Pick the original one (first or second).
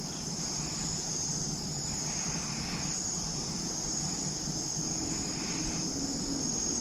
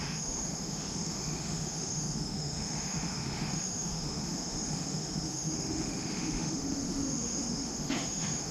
first